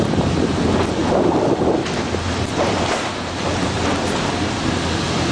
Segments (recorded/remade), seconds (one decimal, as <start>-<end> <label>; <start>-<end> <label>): 0.0-5.3 recorded